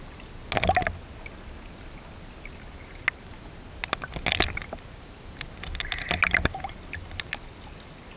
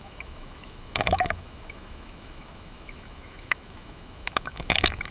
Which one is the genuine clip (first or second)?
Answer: first